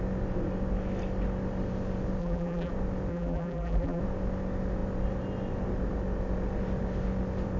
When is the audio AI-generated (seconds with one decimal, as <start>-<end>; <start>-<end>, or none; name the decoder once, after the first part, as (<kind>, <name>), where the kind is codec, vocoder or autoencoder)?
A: 2.2-2.7 (vocoder, BigVGAN v2); 3.1-4.0